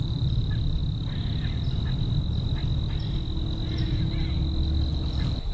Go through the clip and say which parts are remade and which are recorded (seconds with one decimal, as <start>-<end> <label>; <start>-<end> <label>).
0.0-0.8 remade; 0.8-3.8 recorded; 3.8-4.4 remade; 4.4-4.9 recorded; 4.9-5.5 remade